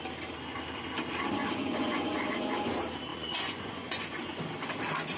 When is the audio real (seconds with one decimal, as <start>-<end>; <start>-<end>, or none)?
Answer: 0.0-1.4; 2.2-3.1; 4.4-5.2